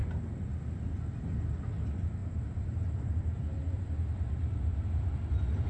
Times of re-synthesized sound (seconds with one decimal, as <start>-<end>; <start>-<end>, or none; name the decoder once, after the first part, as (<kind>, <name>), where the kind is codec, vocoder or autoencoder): 2.2-3.8 (vocoder, BigVGAN v2)